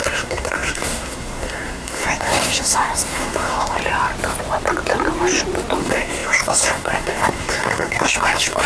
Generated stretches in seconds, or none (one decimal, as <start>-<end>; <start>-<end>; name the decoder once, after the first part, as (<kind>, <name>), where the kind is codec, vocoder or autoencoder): 0.0-3.8 (codec, SNAC); 5.8-8.7